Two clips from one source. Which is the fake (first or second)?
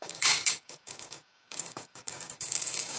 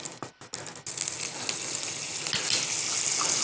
first